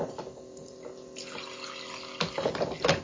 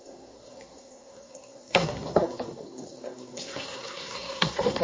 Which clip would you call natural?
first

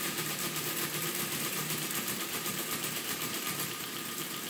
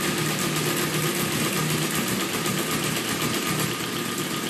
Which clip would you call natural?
second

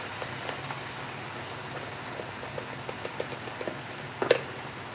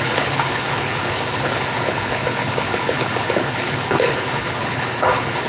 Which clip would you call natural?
first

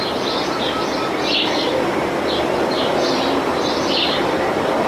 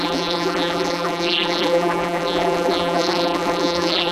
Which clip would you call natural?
first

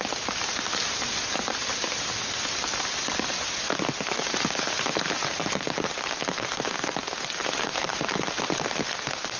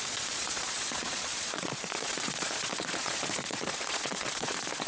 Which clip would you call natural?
first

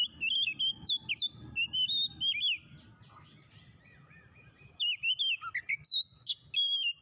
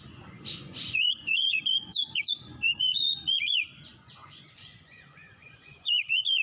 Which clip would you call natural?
first